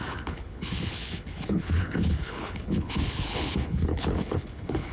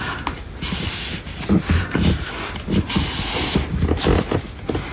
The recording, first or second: second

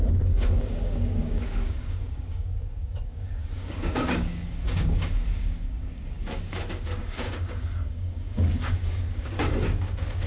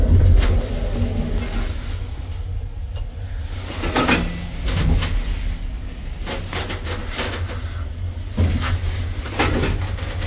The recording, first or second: second